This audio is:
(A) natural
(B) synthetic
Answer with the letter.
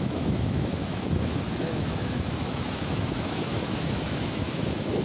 B